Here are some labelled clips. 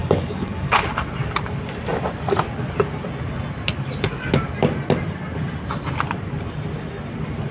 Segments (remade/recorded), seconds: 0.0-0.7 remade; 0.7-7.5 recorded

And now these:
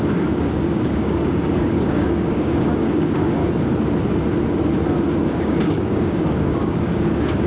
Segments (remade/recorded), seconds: 0.0-3.4 remade; 3.4-5.0 recorded; 5.0-7.5 remade

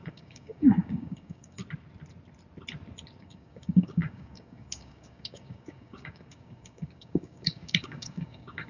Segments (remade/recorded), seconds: 0.0-1.6 remade; 1.6-3.2 recorded; 3.2-8.7 remade